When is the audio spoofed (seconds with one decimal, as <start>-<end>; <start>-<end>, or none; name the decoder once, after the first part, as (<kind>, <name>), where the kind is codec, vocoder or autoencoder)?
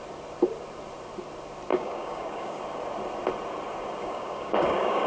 1.7-2.6 (codec, DAC); 4.0-5.1